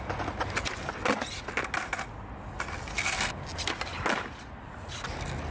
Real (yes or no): yes